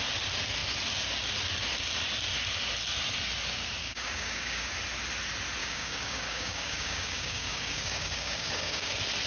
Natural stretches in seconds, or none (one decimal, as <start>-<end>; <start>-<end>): 0.0-3.8; 4.7-5.6; 8.9-9.3